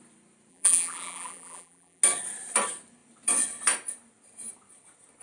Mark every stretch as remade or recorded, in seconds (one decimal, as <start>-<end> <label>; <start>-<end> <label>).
0.0-0.5 recorded; 0.5-2.0 remade; 2.0-5.2 recorded